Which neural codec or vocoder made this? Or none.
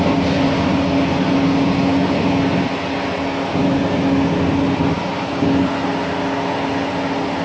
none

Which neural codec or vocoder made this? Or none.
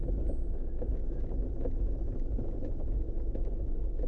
none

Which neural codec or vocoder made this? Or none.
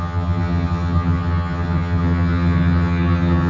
vocoder, HiFi-GAN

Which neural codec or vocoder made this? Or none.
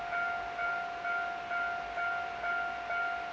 none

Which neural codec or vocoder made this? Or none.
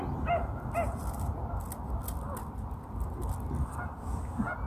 none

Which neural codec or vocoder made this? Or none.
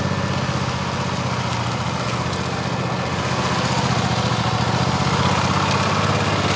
none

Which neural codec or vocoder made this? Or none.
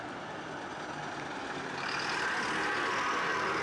none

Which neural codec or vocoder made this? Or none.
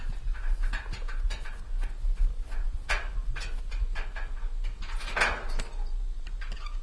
none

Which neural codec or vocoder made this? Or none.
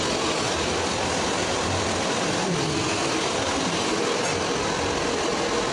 none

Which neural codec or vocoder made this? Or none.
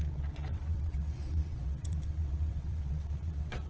vocoder, WaveNeXt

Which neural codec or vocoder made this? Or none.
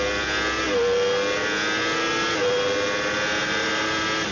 none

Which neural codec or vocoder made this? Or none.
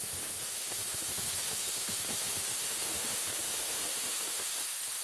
autoencoder, DAC-VAE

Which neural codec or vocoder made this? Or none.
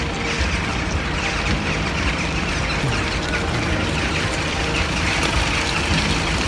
none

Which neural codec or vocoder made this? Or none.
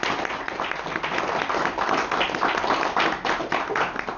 none